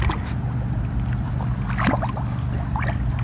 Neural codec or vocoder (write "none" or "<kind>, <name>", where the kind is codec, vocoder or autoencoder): none